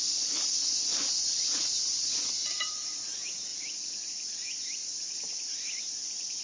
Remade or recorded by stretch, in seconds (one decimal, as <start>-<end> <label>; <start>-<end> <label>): 0.0-1.2 recorded; 1.2-3.0 remade; 3.0-3.5 recorded; 3.5-4.1 remade; 4.1-4.8 recorded; 4.8-5.8 remade; 5.8-6.4 recorded